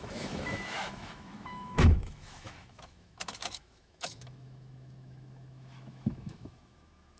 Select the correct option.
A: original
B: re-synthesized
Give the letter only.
B